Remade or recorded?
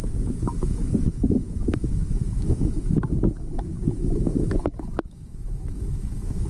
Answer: remade